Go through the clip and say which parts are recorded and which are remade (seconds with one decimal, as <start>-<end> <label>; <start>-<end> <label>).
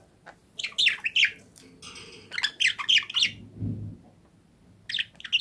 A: 0.0-5.4 recorded